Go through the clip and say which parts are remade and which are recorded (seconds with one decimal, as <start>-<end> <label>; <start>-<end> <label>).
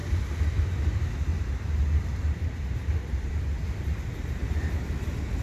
0.0-1.3 recorded; 1.3-4.5 remade; 4.5-5.4 recorded